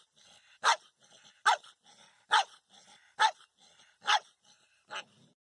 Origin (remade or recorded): recorded